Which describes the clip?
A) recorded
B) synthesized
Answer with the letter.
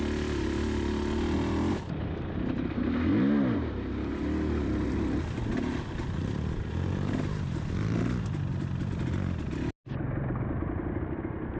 A